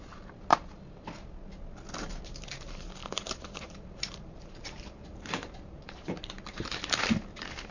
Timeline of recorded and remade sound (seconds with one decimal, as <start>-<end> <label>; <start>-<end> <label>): 0.0-3.0 recorded; 3.0-7.7 remade